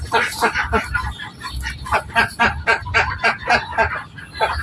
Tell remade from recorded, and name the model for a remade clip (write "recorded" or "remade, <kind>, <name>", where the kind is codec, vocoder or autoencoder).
recorded